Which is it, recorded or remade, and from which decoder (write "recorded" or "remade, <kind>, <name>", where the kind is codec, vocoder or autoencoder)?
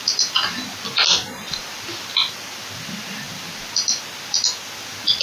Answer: recorded